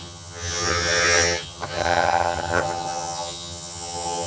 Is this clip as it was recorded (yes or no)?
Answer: no